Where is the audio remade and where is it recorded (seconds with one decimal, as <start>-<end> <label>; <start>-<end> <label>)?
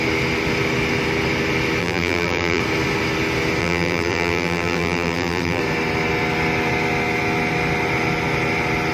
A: 0.0-1.8 recorded; 1.8-2.6 remade; 2.6-3.6 recorded; 3.6-5.6 remade; 5.6-8.9 recorded